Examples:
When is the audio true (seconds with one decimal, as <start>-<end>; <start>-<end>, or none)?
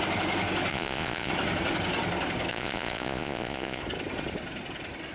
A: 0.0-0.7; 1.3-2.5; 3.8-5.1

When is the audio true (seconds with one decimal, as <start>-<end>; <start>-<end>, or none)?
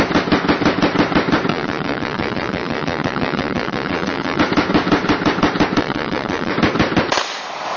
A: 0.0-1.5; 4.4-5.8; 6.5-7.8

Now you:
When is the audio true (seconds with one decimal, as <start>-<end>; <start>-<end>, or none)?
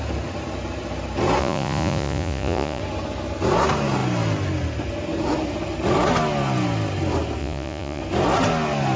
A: 0.0-1.4; 2.8-7.4; 8.0-9.0